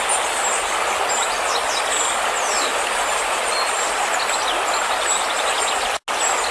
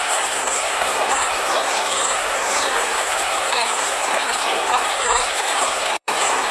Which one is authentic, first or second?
first